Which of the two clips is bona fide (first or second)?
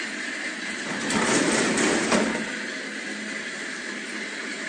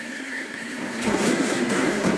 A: first